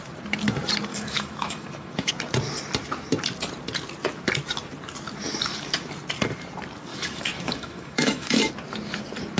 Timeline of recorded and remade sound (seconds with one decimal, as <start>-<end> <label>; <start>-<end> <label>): 0.0-0.9 recorded; 0.9-2.1 remade; 2.1-6.9 recorded; 6.9-8.5 remade; 8.5-9.4 recorded